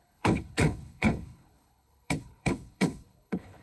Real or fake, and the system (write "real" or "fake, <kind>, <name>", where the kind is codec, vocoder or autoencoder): fake, codec, HILCodec